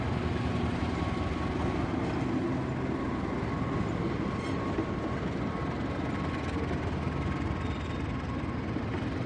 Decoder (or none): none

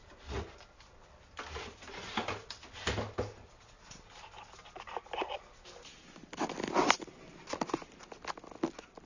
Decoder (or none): none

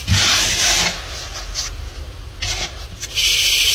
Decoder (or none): none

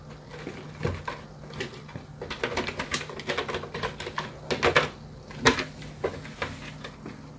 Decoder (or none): none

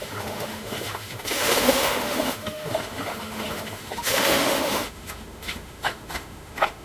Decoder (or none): autoencoder, DAC-VAE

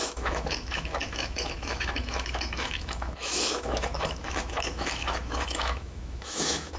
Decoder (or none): autoencoder, DAC-VAE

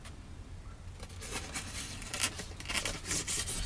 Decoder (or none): none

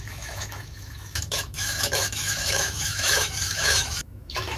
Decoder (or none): autoencoder, DAC-VAE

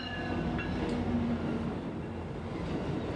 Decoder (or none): none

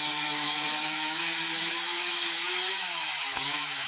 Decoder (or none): autoencoder, DAC-VAE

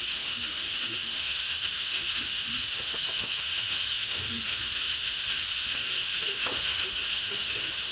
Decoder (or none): autoencoder, DAC-VAE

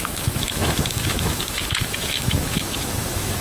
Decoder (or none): autoencoder, DAC-VAE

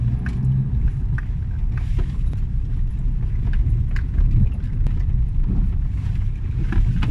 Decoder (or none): none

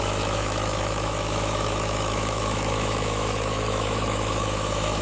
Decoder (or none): autoencoder, DAC-VAE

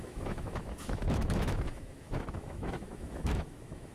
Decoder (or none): autoencoder, DAC-VAE